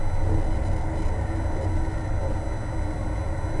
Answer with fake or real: real